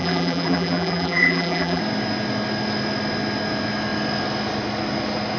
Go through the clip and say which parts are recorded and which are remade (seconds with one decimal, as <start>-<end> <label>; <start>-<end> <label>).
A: 0.0-1.8 remade; 1.8-5.4 recorded